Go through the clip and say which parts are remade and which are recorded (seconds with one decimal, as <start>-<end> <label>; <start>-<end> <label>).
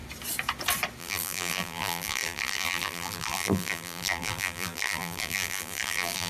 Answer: 0.0-1.0 recorded; 1.0-6.3 remade